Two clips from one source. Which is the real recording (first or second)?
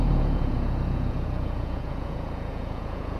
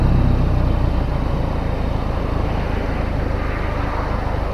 second